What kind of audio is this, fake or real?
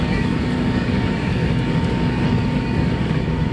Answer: fake